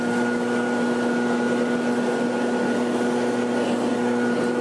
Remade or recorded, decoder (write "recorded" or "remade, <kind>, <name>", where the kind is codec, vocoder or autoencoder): recorded